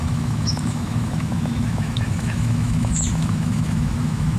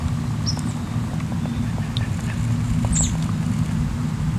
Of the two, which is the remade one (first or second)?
first